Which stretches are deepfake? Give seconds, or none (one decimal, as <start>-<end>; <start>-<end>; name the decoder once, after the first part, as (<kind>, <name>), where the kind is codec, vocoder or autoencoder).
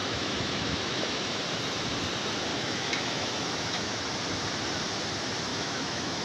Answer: 0.0-1.4 (autoencoder, DAC-VAE); 2.5-4.0; 5.5-6.2